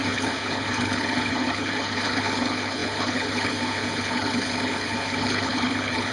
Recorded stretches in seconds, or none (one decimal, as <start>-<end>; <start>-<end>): none